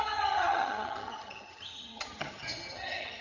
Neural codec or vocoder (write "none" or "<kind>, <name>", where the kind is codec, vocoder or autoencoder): vocoder, HiFi-GAN